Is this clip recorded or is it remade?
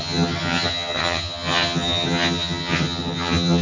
remade